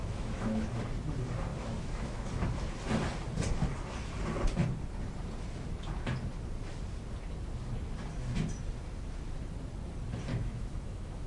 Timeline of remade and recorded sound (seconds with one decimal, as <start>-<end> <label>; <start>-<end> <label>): 0.0-0.8 remade; 0.8-1.5 recorded; 1.5-2.3 remade; 2.3-10.3 recorded; 10.3-11.3 remade